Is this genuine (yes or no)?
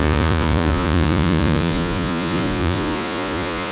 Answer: no